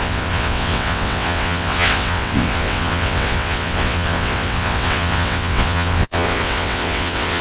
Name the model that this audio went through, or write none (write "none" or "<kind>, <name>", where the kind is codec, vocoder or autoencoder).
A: vocoder, WaveNeXt